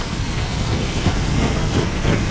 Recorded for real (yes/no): no